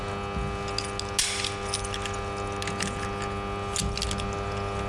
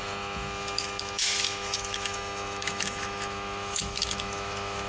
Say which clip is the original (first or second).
first